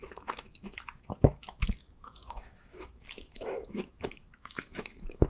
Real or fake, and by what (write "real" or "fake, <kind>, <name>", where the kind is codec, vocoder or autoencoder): fake, autoencoder, DAC-VAE